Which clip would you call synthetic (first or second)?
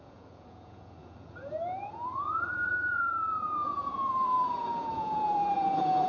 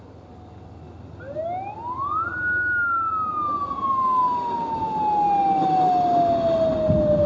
first